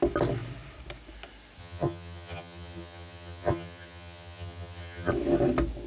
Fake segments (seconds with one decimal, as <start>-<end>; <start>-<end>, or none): 1.6-5.1